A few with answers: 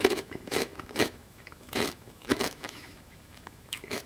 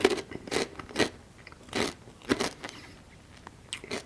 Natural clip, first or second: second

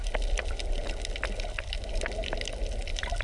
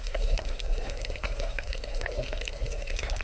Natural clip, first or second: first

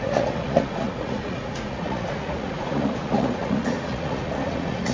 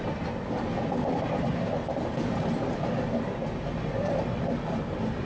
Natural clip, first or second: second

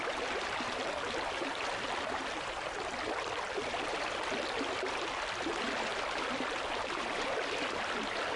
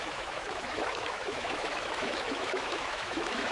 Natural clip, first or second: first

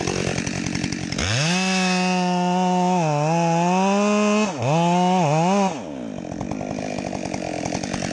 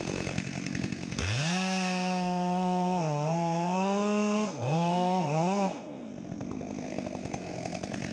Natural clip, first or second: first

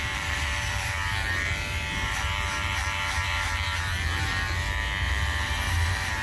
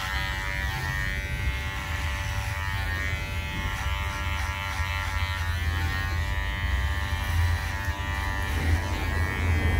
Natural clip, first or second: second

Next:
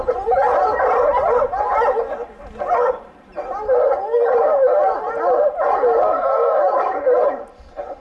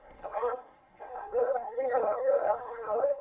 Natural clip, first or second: first